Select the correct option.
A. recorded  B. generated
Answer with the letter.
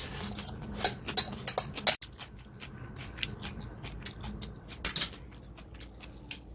A